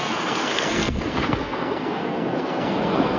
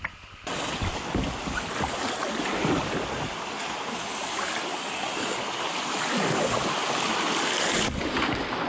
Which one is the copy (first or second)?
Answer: first